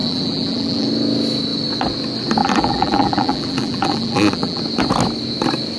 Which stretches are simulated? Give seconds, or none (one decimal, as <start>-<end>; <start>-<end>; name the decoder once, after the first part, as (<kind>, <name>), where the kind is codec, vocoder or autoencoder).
0.0-0.9 (vocoder, BigVGAN v2); 2.4-4.6